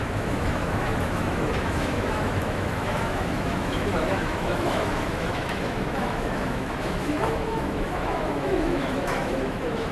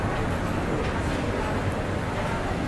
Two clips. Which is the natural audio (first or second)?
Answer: second